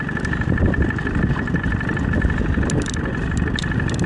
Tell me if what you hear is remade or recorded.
recorded